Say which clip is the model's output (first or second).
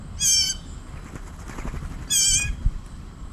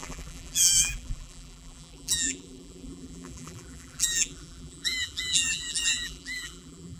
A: second